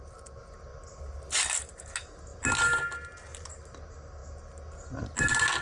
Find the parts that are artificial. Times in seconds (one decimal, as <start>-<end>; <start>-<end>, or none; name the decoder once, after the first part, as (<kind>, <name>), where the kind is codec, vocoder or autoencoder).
none